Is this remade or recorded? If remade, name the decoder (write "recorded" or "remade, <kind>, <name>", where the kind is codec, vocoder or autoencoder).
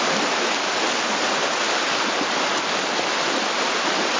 recorded